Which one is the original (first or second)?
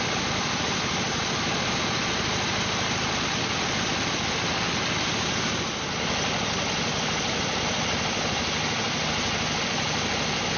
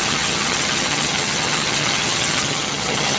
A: first